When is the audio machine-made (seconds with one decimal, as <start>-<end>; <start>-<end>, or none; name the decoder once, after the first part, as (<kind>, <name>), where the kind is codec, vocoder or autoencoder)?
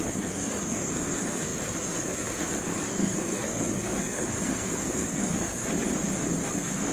0.0-5.6 (codec, SNAC); 6.5-6.9